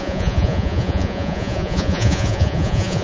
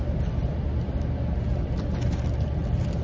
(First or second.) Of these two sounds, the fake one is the first